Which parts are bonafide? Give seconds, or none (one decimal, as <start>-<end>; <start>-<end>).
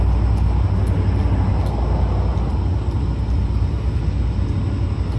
0.0-5.2